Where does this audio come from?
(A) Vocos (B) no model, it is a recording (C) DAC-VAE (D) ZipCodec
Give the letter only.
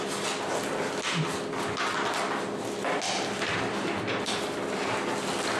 B